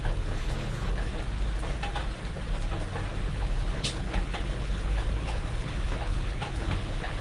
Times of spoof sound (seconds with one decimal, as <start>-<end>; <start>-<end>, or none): 0.0-1.1; 3.3-7.2